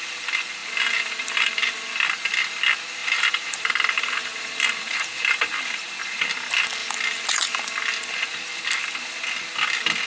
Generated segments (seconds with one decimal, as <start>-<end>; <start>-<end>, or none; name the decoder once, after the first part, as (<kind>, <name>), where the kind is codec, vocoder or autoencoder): 0.6-1.6 (vocoder, BigVGAN v2); 3.0-5.8; 6.8-7.8